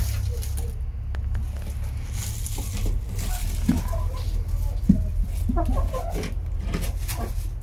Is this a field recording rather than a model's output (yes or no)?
yes